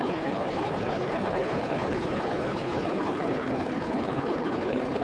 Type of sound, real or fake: fake